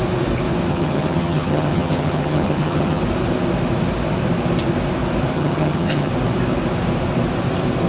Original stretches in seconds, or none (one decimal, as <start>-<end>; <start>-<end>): 0.0-0.7; 3.0-5.3; 6.1-7.9